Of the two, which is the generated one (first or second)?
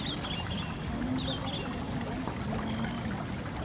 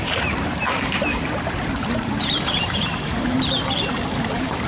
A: second